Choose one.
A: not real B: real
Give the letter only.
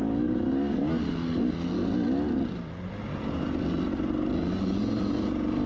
B